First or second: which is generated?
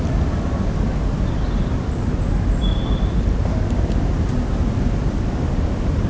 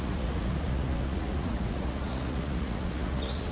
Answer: second